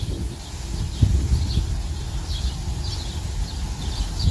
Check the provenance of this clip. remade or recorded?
recorded